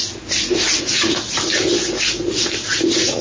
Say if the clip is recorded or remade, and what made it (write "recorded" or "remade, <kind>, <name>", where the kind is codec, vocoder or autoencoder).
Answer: recorded